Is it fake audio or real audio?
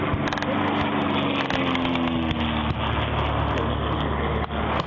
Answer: real